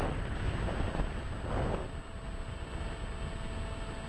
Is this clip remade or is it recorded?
recorded